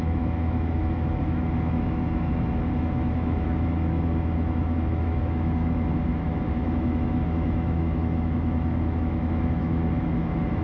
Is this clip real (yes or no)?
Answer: no